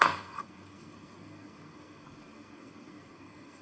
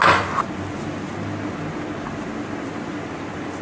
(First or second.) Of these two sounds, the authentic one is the second